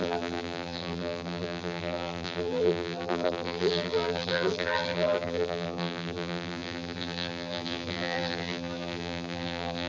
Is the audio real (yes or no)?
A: no